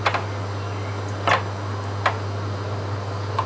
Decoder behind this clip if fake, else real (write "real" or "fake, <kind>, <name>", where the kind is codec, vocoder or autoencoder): real